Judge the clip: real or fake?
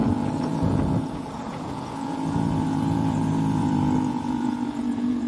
fake